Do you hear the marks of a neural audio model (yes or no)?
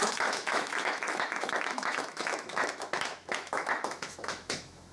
yes